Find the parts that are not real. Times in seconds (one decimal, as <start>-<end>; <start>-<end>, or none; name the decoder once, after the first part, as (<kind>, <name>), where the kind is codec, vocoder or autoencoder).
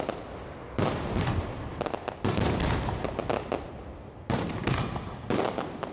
none